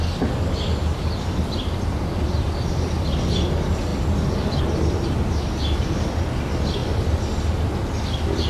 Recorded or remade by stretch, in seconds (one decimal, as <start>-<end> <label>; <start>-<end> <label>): 0.0-8.5 recorded